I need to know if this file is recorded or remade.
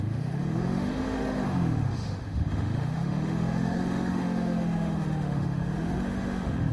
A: remade